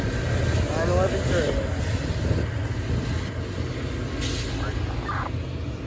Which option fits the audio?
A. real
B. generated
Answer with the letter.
A